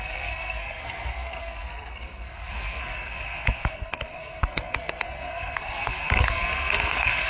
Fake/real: fake